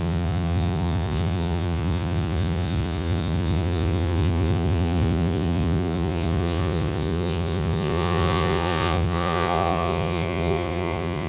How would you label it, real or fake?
fake